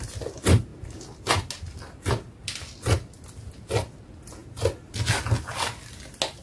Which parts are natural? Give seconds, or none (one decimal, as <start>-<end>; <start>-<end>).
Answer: 0.0-6.4